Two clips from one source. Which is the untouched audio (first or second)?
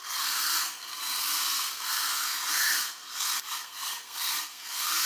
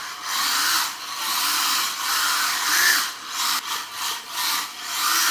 second